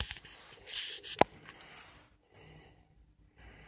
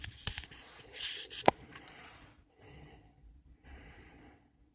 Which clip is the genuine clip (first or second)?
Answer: first